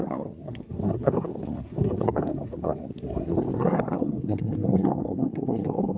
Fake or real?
fake